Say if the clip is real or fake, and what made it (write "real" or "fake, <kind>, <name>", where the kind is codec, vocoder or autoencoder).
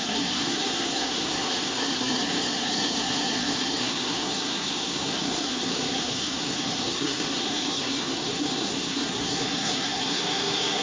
fake, codec, SNAC